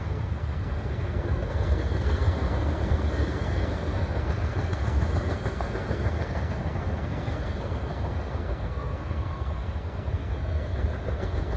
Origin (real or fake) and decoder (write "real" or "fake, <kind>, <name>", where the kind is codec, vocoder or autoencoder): fake, codec, SNAC